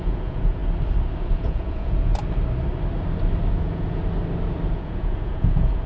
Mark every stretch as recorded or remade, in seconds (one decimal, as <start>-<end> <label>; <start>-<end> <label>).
0.0-0.6 remade; 0.6-1.2 recorded; 1.2-2.1 remade; 2.1-3.5 recorded; 3.5-4.0 remade; 4.0-4.7 recorded; 4.7-5.9 remade